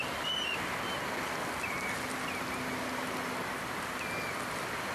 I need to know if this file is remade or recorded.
recorded